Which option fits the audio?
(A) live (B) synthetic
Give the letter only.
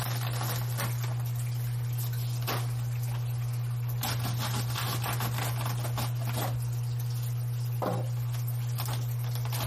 A